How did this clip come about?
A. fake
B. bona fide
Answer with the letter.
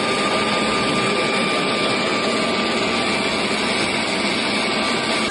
B